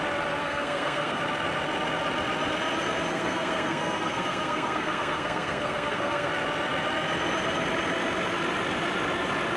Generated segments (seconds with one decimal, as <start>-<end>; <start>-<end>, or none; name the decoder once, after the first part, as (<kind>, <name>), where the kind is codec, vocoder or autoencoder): 0.4-1.2 (codec, SNAC); 3.1-6.3